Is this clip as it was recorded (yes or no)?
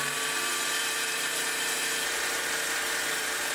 no